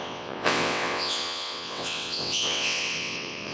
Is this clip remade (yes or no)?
yes